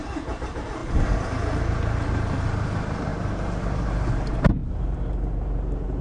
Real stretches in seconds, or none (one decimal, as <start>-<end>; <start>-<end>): 0.8-1.7; 3.1-3.6; 4.6-5.3